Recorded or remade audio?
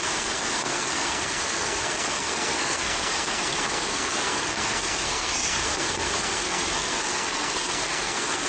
remade